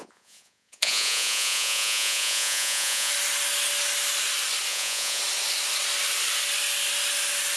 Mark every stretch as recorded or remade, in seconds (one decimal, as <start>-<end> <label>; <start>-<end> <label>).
0.0-3.1 remade; 3.1-4.7 recorded; 4.7-5.2 remade; 5.2-7.6 recorded